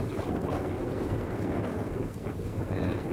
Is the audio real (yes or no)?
no